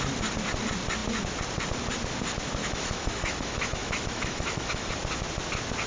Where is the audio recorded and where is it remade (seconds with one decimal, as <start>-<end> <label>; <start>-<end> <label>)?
0.0-2.6 recorded; 2.6-4.9 remade; 4.9-5.9 recorded